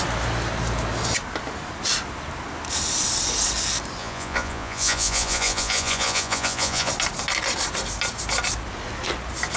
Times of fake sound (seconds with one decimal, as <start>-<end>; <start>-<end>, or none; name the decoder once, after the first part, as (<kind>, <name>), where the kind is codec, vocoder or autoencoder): 4.0-6.9 (vocoder, Vocos)